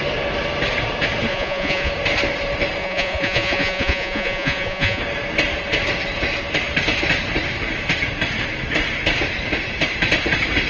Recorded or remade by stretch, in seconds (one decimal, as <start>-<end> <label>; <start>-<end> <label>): 0.0-1.3 recorded; 1.3-1.9 remade; 1.9-2.8 recorded; 2.8-5.0 remade; 5.0-10.7 recorded